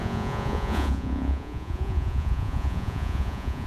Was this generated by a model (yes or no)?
yes